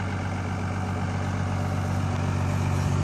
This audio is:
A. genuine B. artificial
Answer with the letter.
A